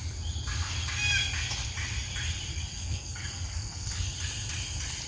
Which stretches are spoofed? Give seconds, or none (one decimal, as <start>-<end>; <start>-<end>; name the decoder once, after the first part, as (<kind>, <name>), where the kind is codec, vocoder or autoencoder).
2.5-4.0 (codec, SNAC)